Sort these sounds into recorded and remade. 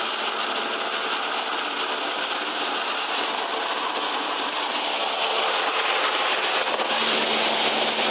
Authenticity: recorded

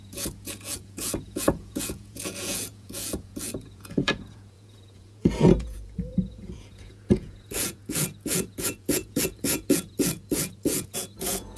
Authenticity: remade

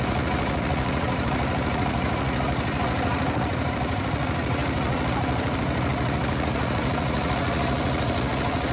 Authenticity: remade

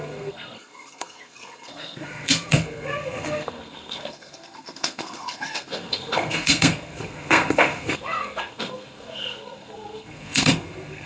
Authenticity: remade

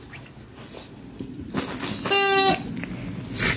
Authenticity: recorded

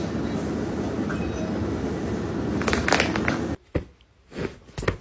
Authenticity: recorded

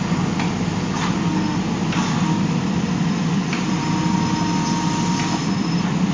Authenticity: recorded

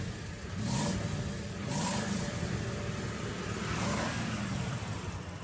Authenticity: remade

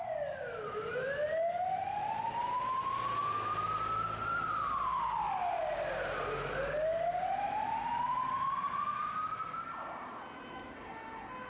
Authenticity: recorded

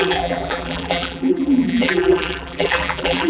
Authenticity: remade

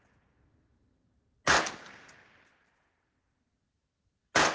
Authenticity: recorded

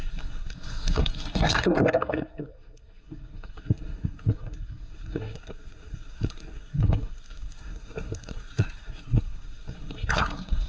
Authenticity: remade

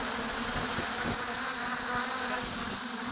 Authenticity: recorded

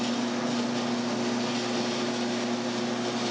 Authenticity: recorded